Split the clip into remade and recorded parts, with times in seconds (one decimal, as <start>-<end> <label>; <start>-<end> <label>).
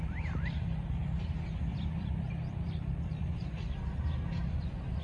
0.0-1.0 recorded; 1.0-4.0 remade; 4.0-5.0 recorded